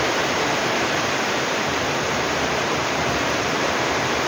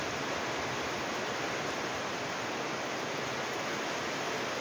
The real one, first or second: second